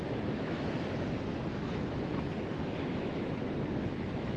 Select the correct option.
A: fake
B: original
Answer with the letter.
A